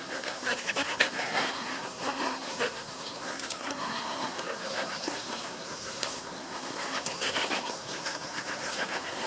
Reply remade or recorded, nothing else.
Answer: remade